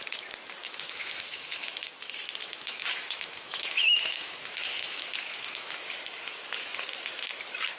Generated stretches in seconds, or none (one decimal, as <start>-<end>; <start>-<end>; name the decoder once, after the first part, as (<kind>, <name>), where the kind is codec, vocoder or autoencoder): 0.6-1.9 (autoencoder, DAC-VAE); 2.4-5.8